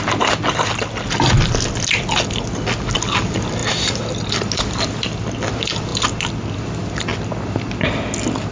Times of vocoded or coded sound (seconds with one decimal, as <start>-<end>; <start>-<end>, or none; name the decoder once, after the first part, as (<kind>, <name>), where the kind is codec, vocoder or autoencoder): none